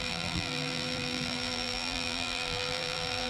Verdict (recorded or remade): remade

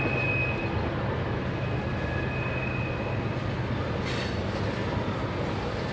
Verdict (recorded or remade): recorded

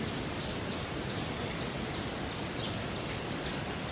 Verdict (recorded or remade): recorded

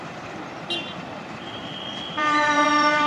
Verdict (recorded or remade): remade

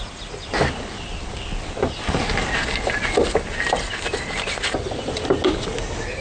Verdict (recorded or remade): recorded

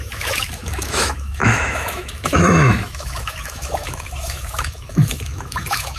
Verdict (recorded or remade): remade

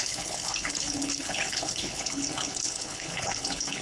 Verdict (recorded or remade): remade